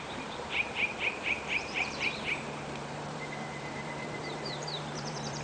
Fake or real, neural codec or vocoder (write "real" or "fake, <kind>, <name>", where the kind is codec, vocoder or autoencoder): fake, vocoder, BigVGAN v2